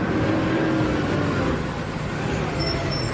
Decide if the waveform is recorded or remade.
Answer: recorded